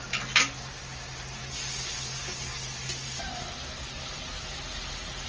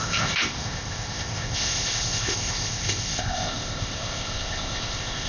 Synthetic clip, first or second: second